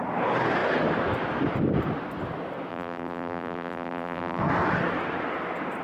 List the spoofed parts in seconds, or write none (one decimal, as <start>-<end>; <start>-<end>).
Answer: 2.7-4.4